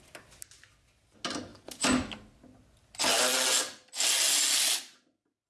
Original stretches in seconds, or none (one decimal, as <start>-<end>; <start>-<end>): 0.0-5.5